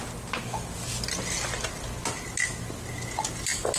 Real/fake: real